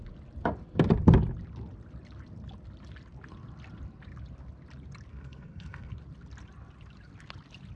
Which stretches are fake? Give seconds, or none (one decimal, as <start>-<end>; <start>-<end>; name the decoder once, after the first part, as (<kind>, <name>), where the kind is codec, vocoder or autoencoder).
5.1-5.9 (codec, SNAC)